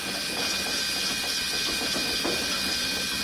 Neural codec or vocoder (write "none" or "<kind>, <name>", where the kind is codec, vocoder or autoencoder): none